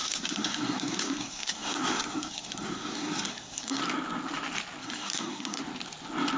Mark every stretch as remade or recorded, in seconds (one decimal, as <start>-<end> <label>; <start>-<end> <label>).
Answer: 0.0-3.8 remade; 3.8-4.8 recorded; 4.8-5.6 remade; 5.6-6.4 recorded

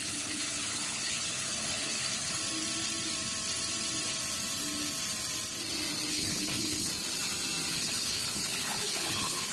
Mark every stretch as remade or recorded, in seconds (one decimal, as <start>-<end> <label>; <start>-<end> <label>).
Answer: 0.0-2.4 remade; 2.4-6.1 recorded; 6.1-6.9 remade; 6.9-7.7 recorded; 7.7-9.5 remade

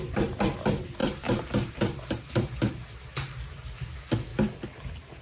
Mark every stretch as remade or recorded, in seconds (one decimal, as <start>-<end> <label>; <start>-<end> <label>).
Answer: 0.0-1.0 recorded; 1.0-2.7 remade; 2.7-5.2 recorded

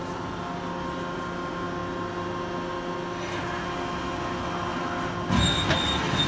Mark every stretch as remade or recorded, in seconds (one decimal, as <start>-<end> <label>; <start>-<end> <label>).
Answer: 0.0-6.3 recorded

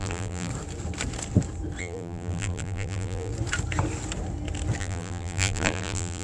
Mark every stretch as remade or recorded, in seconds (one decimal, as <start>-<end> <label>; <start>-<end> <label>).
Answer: 0.0-0.5 remade; 0.5-1.8 recorded; 1.8-3.3 remade; 3.3-4.8 recorded; 4.8-6.2 remade

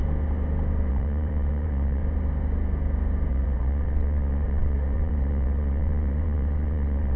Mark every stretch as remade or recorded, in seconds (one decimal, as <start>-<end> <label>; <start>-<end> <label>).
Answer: 0.0-0.9 recorded; 0.9-2.0 remade; 2.0-3.3 recorded; 3.3-7.2 remade

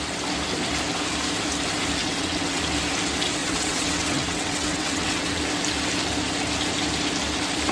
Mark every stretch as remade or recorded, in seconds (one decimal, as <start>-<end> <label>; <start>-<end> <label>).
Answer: 0.0-2.0 recorded; 2.0-2.6 remade; 2.6-3.4 recorded; 3.4-5.4 remade; 5.4-7.7 recorded